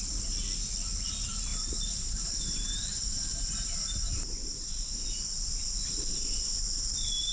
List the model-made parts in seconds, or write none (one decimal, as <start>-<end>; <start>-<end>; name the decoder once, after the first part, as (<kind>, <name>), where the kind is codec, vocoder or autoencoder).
1.5-5.0 (vocoder, BigVGAN v2)

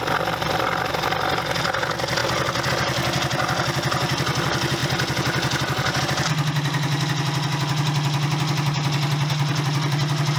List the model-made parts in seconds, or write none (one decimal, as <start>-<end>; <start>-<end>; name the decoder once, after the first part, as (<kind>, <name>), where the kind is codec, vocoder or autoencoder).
none

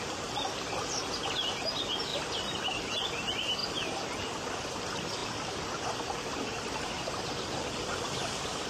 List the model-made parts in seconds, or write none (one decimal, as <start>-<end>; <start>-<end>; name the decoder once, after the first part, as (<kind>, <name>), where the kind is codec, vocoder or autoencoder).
2.1-2.9 (vocoder, BigVGAN v2)

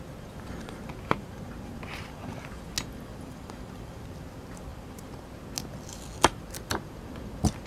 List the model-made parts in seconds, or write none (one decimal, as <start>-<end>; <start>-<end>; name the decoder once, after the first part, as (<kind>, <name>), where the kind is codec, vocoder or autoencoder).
3.1-4.0 (vocoder, BigVGAN v2)

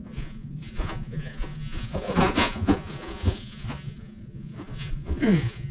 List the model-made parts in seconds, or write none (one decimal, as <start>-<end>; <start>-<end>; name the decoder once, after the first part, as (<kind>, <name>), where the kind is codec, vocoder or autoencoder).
0.0-5.7 (vocoder, Vocos)

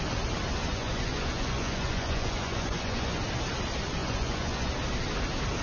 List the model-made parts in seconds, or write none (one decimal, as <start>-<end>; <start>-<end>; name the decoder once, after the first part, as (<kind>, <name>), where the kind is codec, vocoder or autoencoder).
0.7-3.2 (vocoder, Vocos); 4.0-4.7